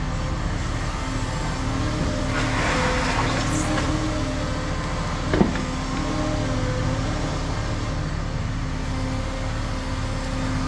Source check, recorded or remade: recorded